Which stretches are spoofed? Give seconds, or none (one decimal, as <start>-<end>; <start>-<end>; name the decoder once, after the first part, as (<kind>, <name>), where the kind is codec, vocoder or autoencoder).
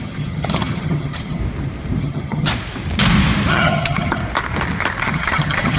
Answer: 0.0-1.4 (vocoder, HiFi-GAN); 2.0-2.5; 3.5-4.2; 5.0-5.8